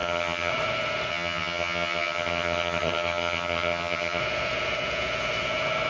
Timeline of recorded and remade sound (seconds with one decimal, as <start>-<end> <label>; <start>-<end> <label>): 0.0-0.5 remade; 0.5-1.1 recorded; 1.1-4.2 remade; 4.2-5.9 recorded